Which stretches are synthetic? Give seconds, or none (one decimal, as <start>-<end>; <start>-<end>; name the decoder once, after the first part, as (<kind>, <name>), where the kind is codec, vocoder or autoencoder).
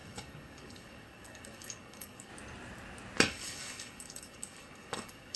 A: 0.0-2.3 (codec, DAC); 3.2-5.4